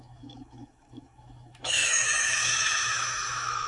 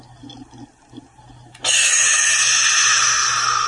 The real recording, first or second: second